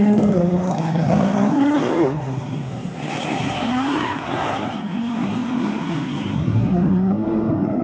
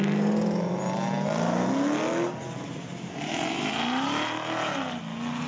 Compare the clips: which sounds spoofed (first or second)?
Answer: first